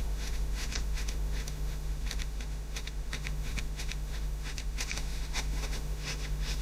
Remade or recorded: remade